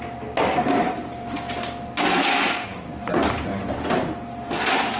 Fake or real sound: real